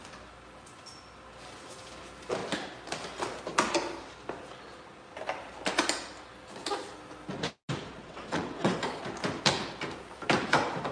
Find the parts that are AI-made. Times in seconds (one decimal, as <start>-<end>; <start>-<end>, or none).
8.0-8.8

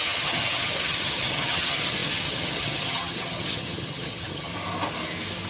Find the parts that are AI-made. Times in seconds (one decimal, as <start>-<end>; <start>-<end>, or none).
0.0-4.5

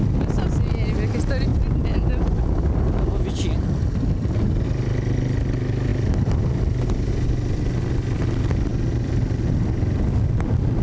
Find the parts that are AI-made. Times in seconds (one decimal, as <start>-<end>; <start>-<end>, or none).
none

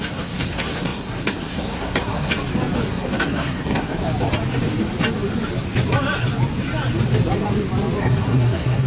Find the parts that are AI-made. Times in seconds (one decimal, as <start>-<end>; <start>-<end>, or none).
0.0-2.3; 2.9-4.0; 8.0-8.9